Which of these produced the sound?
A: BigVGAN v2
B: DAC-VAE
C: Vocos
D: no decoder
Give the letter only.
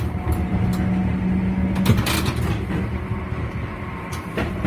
D